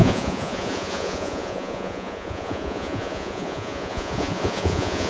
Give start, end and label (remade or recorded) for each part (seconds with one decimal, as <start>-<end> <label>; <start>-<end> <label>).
0.0-5.1 remade